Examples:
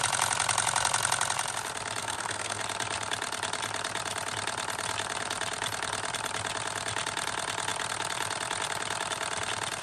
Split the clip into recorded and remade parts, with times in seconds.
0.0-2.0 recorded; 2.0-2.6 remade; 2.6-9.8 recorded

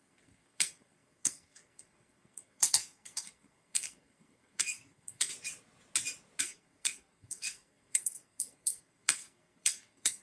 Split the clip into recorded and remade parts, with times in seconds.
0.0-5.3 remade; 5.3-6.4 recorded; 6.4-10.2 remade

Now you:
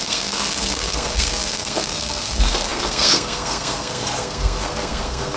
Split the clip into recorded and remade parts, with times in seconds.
0.0-5.4 remade